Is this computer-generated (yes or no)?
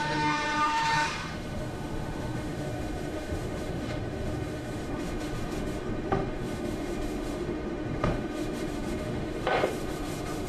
yes